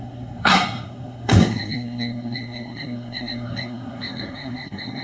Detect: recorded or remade remade